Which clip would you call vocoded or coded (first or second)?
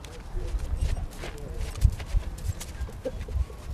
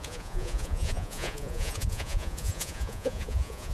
second